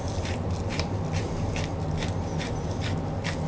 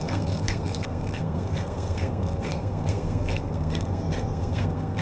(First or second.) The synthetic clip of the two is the second